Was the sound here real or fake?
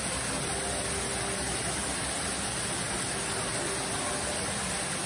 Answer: real